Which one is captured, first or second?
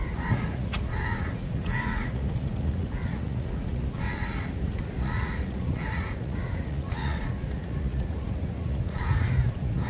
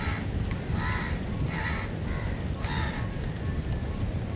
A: second